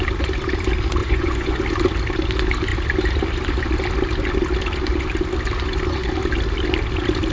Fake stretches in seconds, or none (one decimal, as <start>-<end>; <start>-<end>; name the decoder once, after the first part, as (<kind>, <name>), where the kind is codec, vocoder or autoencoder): 1.0-1.6 (vocoder, Vocos)